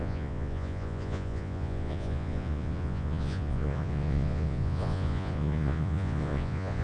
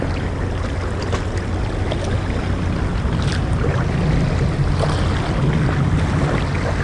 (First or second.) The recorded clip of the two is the second